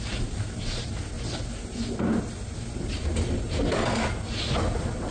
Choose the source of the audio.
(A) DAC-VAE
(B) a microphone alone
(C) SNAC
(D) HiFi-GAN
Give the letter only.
B